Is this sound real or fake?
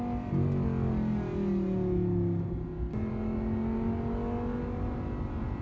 real